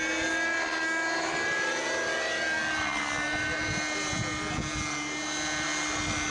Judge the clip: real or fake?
real